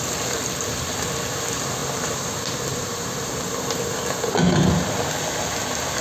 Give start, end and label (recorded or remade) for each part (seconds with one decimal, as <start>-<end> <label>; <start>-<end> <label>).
0.0-1.8 recorded; 1.8-3.4 remade; 3.4-6.0 recorded